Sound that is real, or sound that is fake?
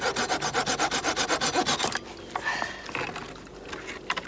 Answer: real